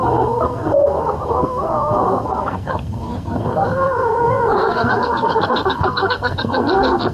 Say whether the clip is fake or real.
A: fake